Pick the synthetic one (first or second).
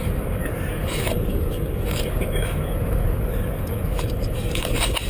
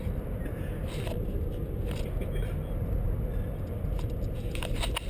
first